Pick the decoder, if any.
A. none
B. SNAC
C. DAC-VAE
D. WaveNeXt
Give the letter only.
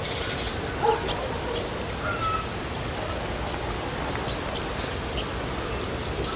A